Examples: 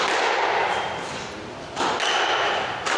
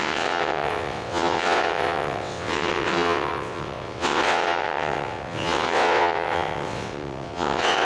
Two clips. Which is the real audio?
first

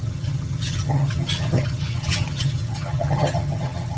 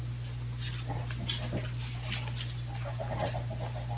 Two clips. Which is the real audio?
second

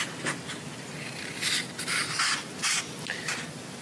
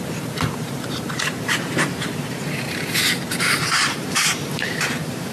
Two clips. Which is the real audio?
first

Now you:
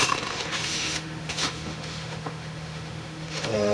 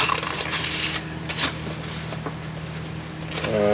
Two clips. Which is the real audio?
second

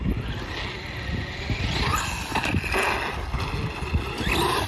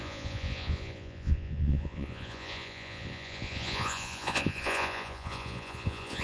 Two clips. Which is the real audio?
first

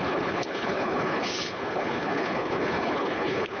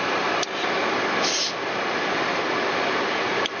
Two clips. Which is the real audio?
second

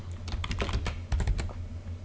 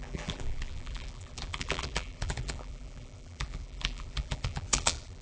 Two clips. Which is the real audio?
first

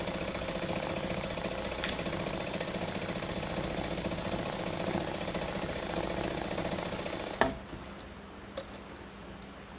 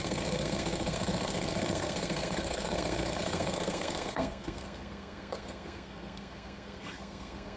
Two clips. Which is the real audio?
first